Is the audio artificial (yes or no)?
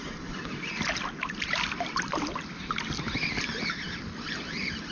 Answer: no